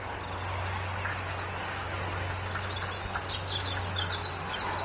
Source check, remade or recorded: recorded